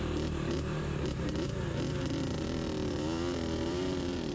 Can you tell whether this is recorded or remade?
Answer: remade